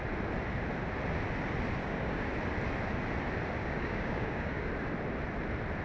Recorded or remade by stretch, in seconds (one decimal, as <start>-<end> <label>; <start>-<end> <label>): 0.0-1.8 recorded; 1.8-2.3 remade; 2.3-3.6 recorded; 3.6-4.7 remade; 4.7-5.8 recorded